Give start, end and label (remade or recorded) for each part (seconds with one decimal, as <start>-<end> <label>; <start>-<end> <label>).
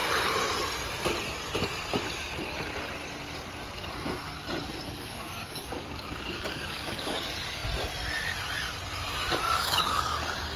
0.0-5.0 recorded; 5.0-7.6 remade; 7.6-9.4 recorded; 9.4-10.6 remade